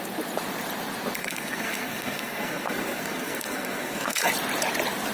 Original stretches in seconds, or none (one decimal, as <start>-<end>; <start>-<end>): 0.0-1.2; 4.3-5.1